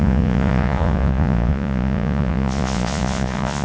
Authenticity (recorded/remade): remade